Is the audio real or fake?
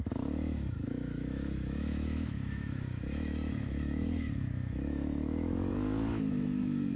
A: fake